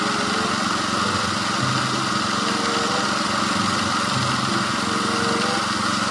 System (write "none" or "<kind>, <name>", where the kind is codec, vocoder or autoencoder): none